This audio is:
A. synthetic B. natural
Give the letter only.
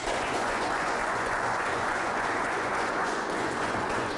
A